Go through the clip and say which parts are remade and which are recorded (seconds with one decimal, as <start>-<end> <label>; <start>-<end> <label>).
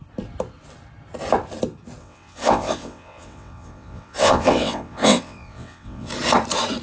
0.0-2.0 recorded; 2.0-6.1 remade; 6.1-6.8 recorded